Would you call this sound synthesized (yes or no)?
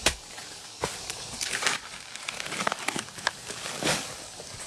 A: yes